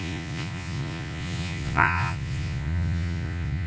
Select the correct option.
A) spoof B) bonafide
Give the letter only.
A